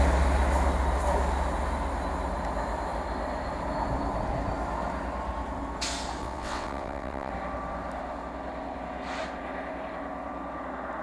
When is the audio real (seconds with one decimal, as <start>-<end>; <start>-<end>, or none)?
0.0-6.2; 7.3-11.0